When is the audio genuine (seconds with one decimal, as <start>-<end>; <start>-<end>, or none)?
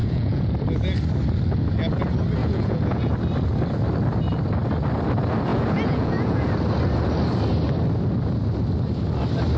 0.5-2.4; 3.1-5.5; 6.5-9.6